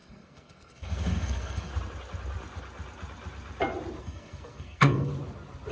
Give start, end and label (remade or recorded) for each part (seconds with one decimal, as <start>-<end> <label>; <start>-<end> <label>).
0.0-1.7 remade; 1.7-4.0 recorded; 4.0-5.1 remade; 5.1-5.7 recorded